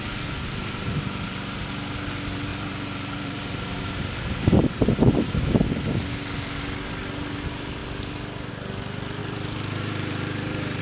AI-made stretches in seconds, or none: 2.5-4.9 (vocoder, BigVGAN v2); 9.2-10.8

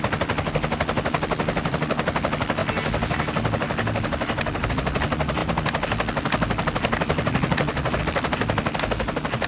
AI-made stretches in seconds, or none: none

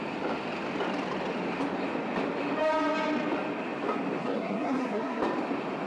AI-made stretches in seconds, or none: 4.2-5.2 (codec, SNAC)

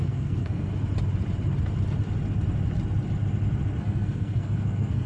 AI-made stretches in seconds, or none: 0.0-0.7 (codec, SNAC); 3.8-5.1

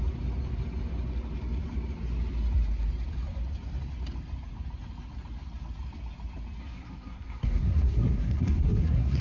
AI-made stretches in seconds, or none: 6.6-9.2 (codec, SNAC)

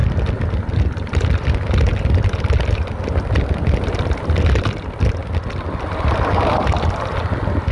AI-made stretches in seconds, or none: 0.0-1.5 (vocoder, BigVGAN v2)

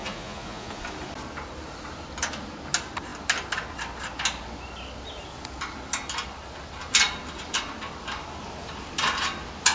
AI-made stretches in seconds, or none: 0.0-0.8 (vocoder, Vocos)